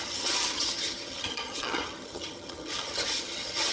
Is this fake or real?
fake